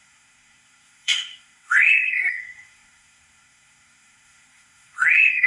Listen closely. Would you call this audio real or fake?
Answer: fake